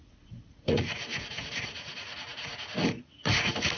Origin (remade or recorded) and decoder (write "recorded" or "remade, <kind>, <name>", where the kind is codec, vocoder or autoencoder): remade, vocoder, Vocos